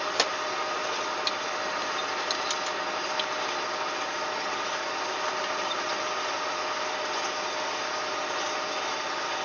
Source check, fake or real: real